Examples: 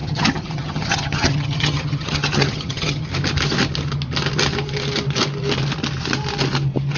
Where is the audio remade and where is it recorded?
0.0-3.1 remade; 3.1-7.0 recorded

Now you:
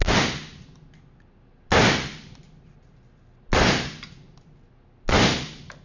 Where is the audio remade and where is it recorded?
0.0-5.8 recorded

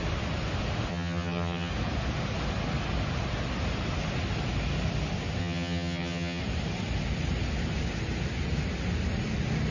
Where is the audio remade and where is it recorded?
0.0-0.9 recorded; 0.9-1.7 remade; 1.7-5.4 recorded; 5.4-6.4 remade; 6.4-9.7 recorded

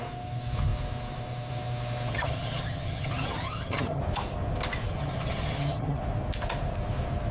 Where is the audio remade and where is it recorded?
0.0-2.1 recorded; 2.1-4.0 remade; 4.0-4.9 recorded; 4.9-6.0 remade; 6.0-7.3 recorded

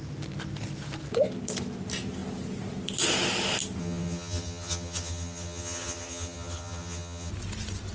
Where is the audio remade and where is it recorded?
0.0-3.8 recorded; 3.8-7.3 remade; 7.3-7.9 recorded

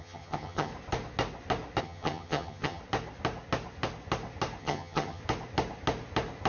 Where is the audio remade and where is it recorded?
0.0-0.7 remade; 0.7-1.8 recorded; 1.8-2.8 remade; 2.8-4.6 recorded; 4.6-5.2 remade; 5.2-6.5 recorded